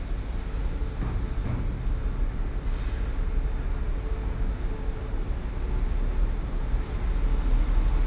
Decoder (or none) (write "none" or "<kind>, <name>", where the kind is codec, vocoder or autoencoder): none